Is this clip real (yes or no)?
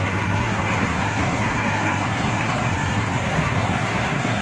no